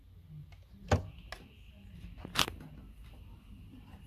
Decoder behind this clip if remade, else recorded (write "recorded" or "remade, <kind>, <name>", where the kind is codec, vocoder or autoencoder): recorded